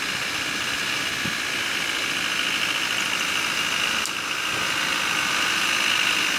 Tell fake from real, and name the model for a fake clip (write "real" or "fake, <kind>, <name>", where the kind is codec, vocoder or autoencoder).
real